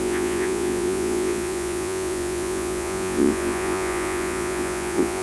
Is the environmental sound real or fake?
fake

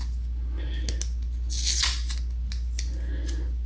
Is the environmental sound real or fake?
real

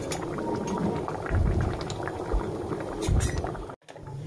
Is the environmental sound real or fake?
real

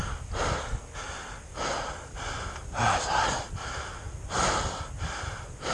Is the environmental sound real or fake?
real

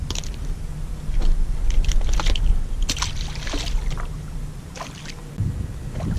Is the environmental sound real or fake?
fake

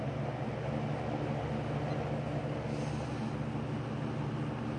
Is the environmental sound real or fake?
real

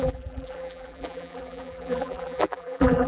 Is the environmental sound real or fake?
fake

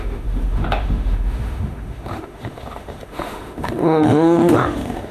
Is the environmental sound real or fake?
fake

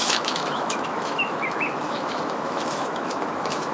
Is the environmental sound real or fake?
fake